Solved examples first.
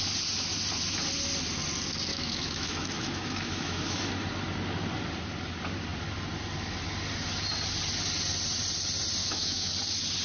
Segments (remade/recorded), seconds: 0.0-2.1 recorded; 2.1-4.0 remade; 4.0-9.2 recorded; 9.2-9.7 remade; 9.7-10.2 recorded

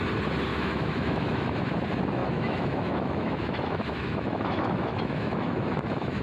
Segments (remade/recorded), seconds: 0.0-0.5 recorded; 0.5-1.7 remade; 1.7-2.2 recorded; 2.2-6.2 remade

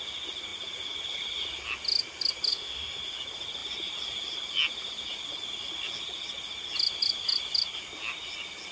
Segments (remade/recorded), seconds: 0.0-2.5 recorded; 2.5-3.0 remade; 3.0-8.7 recorded

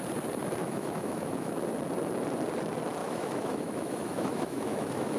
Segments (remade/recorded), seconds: 0.0-0.6 recorded; 0.6-1.5 remade; 1.5-3.0 recorded; 3.0-5.2 remade

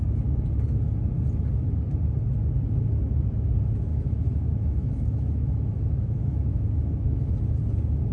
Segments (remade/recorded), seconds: 0.0-3.9 recorded; 3.9-7.3 remade; 7.3-8.1 recorded

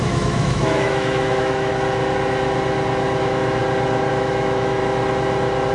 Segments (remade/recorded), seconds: 0.0-1.7 remade; 1.7-3.2 recorded; 3.2-3.6 remade; 3.6-4.1 recorded; 4.1-4.8 remade; 4.8-5.7 recorded

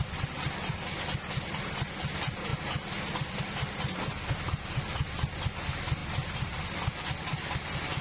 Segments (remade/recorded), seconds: 0.0-8.0 recorded

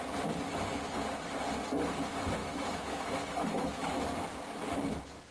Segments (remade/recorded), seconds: 0.0-2.4 recorded; 2.4-3.9 remade; 3.9-5.3 recorded